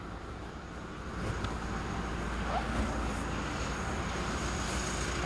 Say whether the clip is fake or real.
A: real